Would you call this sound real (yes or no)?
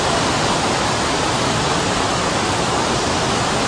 yes